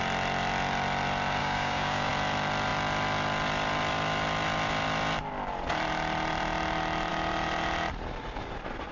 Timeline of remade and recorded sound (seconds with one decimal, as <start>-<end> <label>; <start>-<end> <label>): 0.0-1.4 recorded; 1.4-2.1 remade; 2.1-8.9 recorded